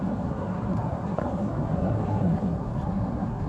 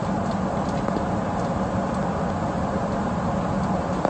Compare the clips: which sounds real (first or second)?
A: second